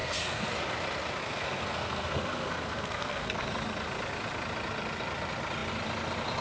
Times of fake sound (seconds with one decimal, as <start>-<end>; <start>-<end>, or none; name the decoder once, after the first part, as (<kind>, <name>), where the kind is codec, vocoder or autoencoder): 0.0-0.5 (codec, SNAC); 1.2-3.4